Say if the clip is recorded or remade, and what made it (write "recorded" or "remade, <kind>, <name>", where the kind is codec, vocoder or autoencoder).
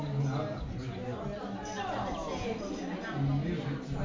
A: recorded